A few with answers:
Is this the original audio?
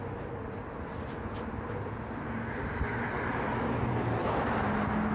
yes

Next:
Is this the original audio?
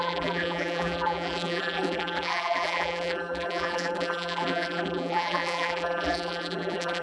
no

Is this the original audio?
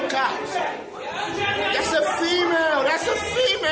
yes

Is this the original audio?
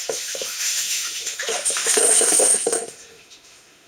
no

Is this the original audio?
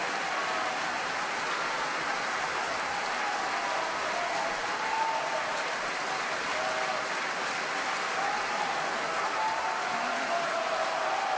yes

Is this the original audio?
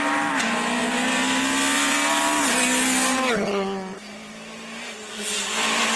yes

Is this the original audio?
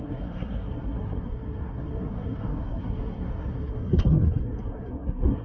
no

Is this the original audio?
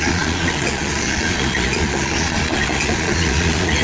no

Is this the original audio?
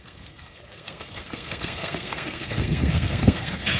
no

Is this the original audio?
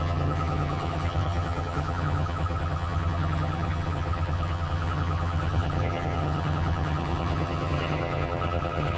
no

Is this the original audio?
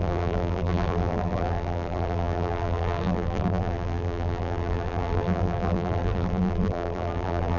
no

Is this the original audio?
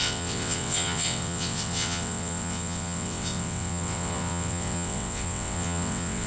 no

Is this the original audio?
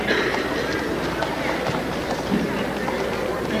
yes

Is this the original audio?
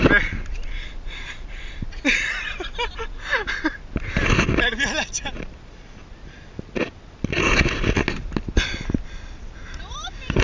yes